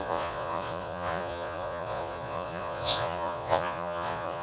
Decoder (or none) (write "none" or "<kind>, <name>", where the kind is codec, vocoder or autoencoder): vocoder, Vocos